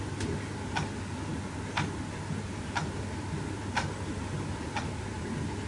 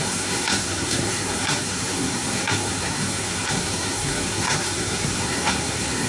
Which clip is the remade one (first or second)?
second